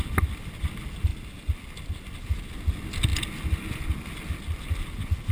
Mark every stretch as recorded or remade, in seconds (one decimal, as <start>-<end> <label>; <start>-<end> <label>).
0.0-5.3 recorded